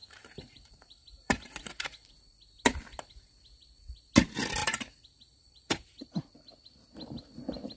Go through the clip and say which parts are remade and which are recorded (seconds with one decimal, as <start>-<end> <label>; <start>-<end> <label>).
0.0-2.1 remade; 2.1-4.6 recorded; 4.6-6.3 remade; 6.3-7.8 recorded